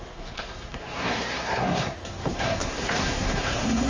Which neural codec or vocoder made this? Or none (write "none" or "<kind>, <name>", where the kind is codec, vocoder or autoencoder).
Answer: codec, SNAC